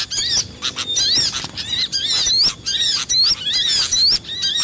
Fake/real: real